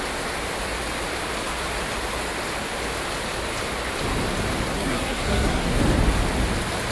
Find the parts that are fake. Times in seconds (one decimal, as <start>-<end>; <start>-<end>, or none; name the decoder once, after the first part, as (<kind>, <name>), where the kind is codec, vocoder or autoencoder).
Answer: 4.7-5.8 (codec, SNAC)